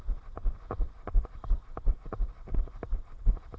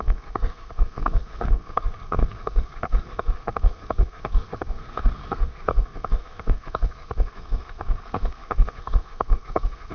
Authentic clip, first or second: first